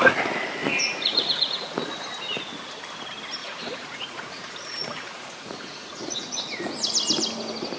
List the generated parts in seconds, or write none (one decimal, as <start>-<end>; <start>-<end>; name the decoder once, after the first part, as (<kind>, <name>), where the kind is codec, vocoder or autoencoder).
0.6-2.0 (vocoder, Vocos); 3.4-6.7